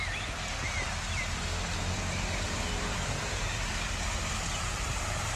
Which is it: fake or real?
fake